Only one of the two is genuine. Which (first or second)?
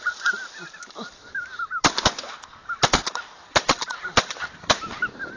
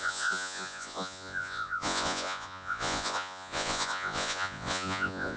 first